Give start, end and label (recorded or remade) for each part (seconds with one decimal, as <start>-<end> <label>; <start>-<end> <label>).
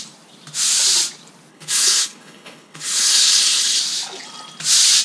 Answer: 0.0-1.5 recorded; 1.5-3.8 remade; 3.8-5.0 recorded